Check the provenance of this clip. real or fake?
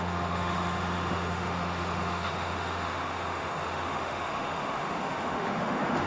fake